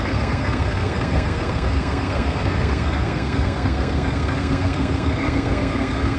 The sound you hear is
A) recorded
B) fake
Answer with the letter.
B